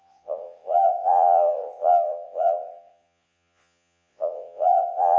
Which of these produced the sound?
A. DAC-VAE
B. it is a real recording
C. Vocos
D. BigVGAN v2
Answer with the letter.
C